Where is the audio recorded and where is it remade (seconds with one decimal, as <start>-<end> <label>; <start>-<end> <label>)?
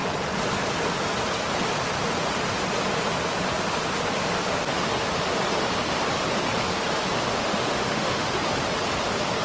0.0-7.3 recorded; 7.3-8.3 remade; 8.3-9.4 recorded